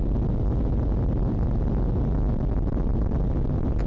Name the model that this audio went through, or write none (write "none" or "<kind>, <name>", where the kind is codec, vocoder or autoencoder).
none